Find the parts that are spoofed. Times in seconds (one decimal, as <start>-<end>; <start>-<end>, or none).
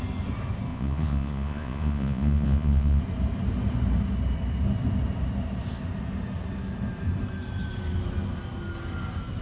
0.7-3.0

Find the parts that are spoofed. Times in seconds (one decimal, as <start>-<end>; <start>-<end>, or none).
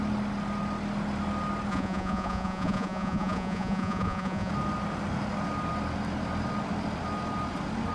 1.7-4.5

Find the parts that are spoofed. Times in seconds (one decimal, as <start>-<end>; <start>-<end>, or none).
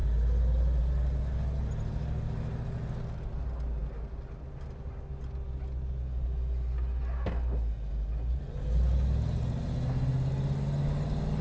none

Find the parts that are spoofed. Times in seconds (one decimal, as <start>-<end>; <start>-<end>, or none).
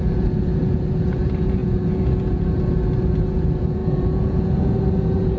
0.0-5.4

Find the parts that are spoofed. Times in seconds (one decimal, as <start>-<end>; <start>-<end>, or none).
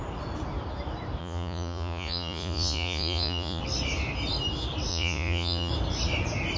1.2-3.6; 4.9-5.7